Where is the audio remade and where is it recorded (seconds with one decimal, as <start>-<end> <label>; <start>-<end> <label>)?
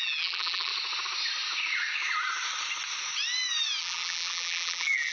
0.0-0.7 remade; 0.7-3.8 recorded; 3.8-5.1 remade